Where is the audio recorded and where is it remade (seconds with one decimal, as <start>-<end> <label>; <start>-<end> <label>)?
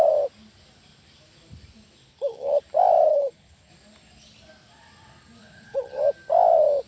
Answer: 0.0-2.0 recorded; 2.0-2.6 remade; 2.6-3.1 recorded; 3.1-3.7 remade; 3.7-5.4 recorded; 5.4-6.0 remade; 6.0-6.9 recorded